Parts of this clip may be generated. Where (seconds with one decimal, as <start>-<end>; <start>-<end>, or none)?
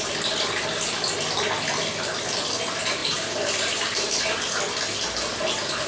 3.0-4.6